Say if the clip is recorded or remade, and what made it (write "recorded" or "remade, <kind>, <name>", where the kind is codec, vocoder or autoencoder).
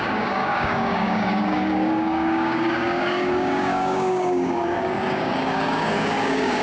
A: remade, codec, DAC